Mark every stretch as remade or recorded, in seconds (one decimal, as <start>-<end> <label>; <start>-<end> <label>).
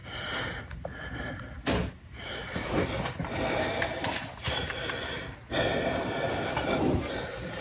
0.0-1.8 recorded; 1.8-4.7 remade; 4.7-7.6 recorded